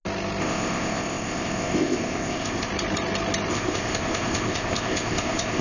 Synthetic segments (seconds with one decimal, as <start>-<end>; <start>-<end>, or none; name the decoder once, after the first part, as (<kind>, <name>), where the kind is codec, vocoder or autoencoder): 0.4-2.7 (codec, ZipCodec); 3.5-5.6